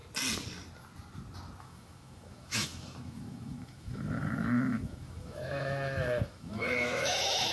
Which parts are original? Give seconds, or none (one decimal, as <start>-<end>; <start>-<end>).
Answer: 0.0-1.6